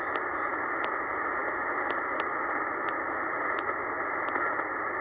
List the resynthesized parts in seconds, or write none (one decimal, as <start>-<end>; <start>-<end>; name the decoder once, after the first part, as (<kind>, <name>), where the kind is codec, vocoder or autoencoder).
none